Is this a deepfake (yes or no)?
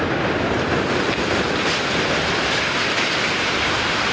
no